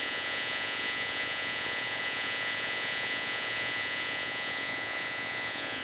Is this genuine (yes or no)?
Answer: no